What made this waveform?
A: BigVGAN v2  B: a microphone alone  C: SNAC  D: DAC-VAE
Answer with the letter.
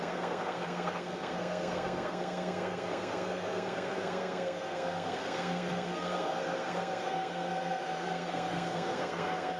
C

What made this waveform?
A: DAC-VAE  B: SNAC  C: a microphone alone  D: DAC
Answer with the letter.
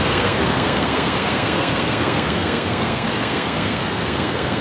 B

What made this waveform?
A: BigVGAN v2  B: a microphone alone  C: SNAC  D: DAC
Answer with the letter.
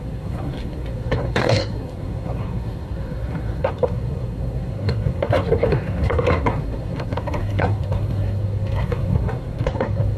C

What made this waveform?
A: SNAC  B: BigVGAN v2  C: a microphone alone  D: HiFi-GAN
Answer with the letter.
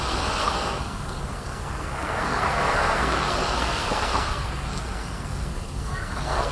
A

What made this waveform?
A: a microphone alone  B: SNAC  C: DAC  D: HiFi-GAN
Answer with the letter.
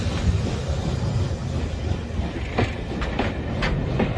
A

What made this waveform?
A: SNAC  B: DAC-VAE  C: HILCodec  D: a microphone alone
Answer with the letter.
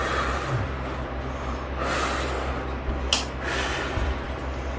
D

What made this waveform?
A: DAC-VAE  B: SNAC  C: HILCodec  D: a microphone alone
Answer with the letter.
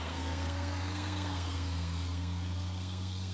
B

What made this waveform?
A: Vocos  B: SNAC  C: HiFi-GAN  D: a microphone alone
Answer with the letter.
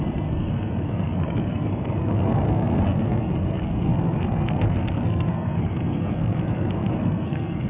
B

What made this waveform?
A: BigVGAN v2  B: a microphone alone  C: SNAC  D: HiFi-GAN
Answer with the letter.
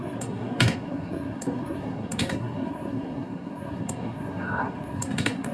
C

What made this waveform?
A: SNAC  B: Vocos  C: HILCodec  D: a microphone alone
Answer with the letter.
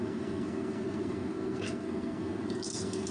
A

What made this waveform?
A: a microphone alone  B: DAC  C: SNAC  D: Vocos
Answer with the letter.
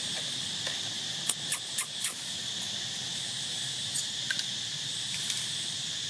A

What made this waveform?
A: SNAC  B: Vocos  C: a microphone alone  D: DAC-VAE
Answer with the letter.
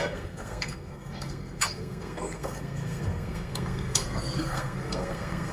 A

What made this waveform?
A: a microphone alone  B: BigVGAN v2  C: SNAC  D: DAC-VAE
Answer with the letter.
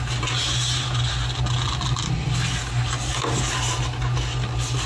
A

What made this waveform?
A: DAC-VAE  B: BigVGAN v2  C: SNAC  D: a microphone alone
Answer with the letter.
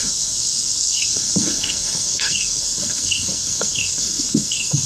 C